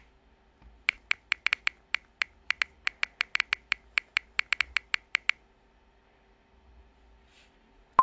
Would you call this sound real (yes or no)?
yes